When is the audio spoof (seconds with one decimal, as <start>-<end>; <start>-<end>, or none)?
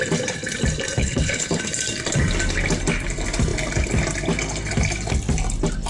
1.0-1.6